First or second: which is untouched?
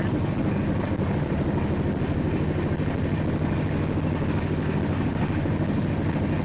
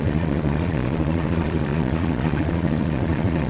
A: first